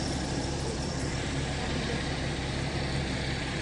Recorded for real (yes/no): no